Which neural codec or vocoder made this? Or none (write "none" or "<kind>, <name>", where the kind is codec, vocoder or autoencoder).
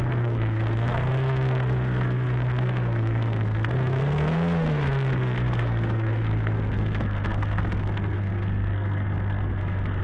codec, SNAC